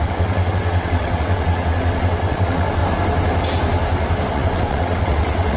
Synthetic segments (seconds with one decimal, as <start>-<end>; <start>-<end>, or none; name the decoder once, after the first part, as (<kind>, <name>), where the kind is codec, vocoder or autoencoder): 0.0-2.8 (vocoder, WaveNeXt); 4.3-5.6